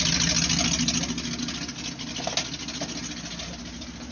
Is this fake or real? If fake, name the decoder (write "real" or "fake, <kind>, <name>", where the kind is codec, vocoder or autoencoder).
real